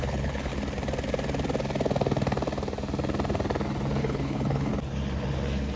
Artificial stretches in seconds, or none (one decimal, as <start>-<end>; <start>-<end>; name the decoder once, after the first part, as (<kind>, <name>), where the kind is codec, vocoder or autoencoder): 0.0-0.5 (codec, HILCodec); 4.0-4.7